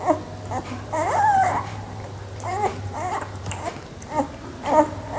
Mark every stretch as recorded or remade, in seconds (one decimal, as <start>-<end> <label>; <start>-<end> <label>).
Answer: 0.0-0.6 recorded; 0.6-3.7 remade; 3.7-5.2 recorded